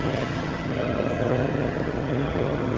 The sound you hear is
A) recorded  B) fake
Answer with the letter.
B